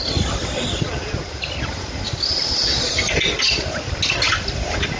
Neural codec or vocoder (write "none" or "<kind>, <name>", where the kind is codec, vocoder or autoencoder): none